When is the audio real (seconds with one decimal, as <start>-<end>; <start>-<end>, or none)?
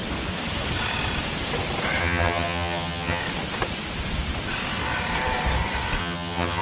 0.0-2.0; 3.2-6.0